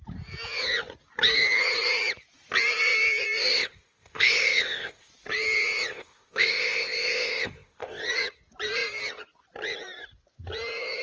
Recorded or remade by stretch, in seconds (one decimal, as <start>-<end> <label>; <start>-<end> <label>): 0.0-3.5 recorded; 3.5-5.1 remade; 5.1-5.9 recorded; 5.9-8.0 remade; 8.0-11.0 recorded